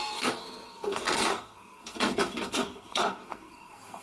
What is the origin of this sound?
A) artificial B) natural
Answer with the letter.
A